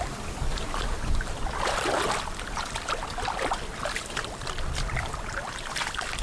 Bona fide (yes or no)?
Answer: no